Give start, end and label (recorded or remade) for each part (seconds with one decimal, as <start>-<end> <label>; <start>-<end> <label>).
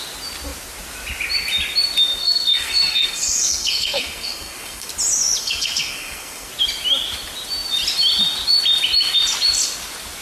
0.0-2.2 recorded; 2.2-4.9 remade; 4.9-5.4 recorded; 5.4-6.5 remade; 6.5-10.2 recorded